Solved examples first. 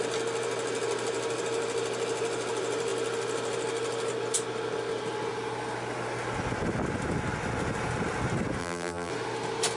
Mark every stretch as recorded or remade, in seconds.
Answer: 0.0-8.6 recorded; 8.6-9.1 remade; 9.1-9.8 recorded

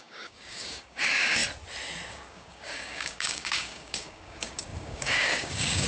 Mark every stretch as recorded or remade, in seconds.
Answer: 0.0-1.4 remade; 1.4-2.1 recorded; 2.1-5.9 remade

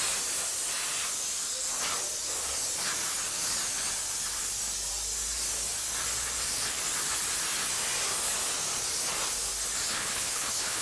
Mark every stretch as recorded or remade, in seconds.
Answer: 0.0-9.9 recorded; 9.9-10.8 remade